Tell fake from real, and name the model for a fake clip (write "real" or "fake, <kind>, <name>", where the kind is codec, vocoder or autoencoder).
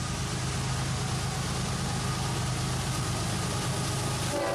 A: real